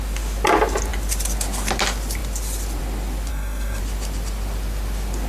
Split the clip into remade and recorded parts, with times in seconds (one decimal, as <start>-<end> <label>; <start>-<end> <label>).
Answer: 0.0-3.3 recorded; 3.3-3.8 remade; 3.8-5.3 recorded